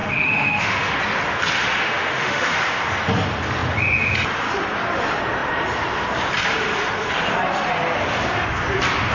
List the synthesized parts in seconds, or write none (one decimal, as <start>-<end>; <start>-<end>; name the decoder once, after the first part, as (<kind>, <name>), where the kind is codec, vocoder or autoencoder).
0.0-1.0 (autoencoder, DAC-VAE); 1.8-2.6